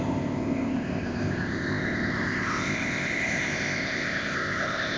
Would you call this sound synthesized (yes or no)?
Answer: yes